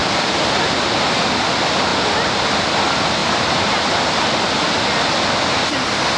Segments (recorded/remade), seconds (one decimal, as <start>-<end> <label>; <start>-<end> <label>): 0.0-0.7 remade; 0.7-3.2 recorded; 3.2-4.8 remade; 4.8-6.2 recorded